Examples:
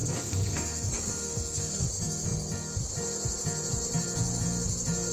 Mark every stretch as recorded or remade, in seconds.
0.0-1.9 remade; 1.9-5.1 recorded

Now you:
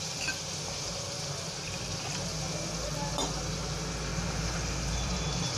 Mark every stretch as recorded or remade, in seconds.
0.0-4.1 recorded; 4.1-5.6 remade

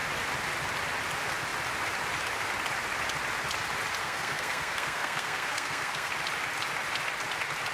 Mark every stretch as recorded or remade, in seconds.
0.0-4.0 recorded; 4.0-6.1 remade; 6.1-7.7 recorded

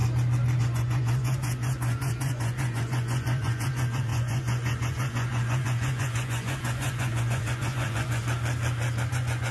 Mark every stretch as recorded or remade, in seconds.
0.0-0.6 recorded; 0.6-8.2 remade; 8.2-9.1 recorded; 9.1-9.5 remade

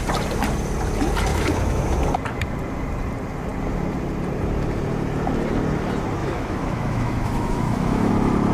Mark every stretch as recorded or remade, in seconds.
0.0-1.3 recorded; 1.3-2.0 remade; 2.0-6.2 recorded; 6.2-8.1 remade; 8.1-8.5 recorded